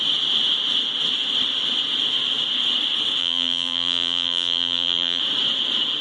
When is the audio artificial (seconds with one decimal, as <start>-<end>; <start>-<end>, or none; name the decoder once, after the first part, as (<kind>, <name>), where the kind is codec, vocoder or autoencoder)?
3.2-5.2 (vocoder, BigVGAN v2)